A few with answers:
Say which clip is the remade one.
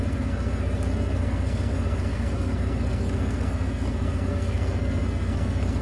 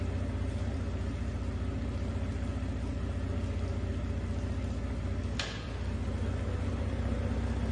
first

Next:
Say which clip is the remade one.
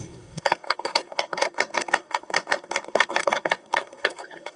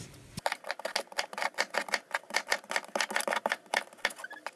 first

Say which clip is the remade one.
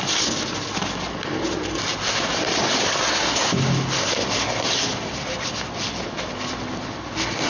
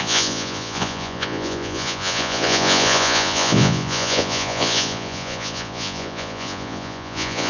second